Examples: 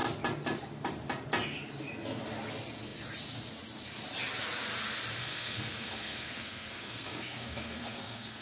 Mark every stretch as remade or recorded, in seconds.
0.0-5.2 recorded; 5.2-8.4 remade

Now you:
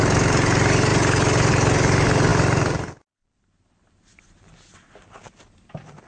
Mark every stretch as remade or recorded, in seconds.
0.0-2.3 recorded; 2.3-6.1 remade

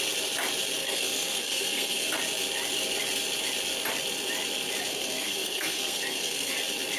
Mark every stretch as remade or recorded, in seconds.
0.0-0.8 recorded; 0.8-2.1 remade; 2.1-4.9 recorded; 4.9-6.5 remade; 6.5-7.0 recorded

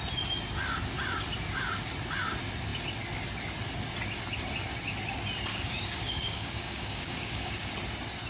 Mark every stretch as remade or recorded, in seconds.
0.0-5.5 recorded; 5.5-7.7 remade; 7.7-8.3 recorded

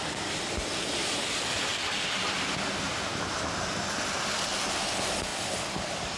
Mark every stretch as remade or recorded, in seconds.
0.0-6.2 recorded

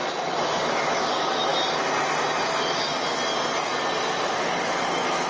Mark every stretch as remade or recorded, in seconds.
0.0-0.7 recorded; 0.7-1.5 remade; 1.5-4.1 recorded; 4.1-5.3 remade

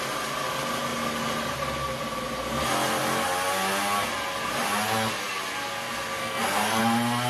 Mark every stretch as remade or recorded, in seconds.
0.0-6.2 recorded; 6.2-6.8 remade; 6.8-7.3 recorded